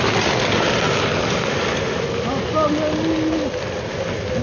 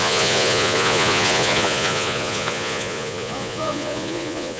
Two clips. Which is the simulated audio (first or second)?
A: second